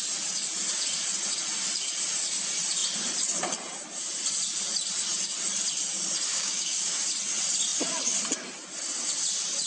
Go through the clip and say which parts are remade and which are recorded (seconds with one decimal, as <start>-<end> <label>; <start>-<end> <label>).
0.0-6.3 recorded; 6.3-6.9 remade; 6.9-9.7 recorded